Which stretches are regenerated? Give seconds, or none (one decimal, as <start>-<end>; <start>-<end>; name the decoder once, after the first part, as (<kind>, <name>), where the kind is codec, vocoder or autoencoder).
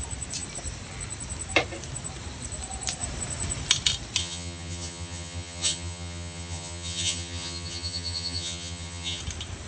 4.2-9.2 (vocoder, HiFi-GAN)